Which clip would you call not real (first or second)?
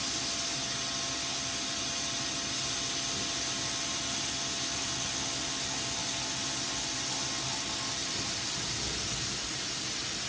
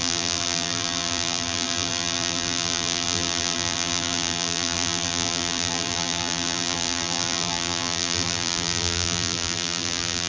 second